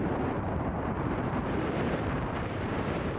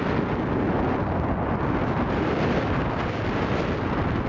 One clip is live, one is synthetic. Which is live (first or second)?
second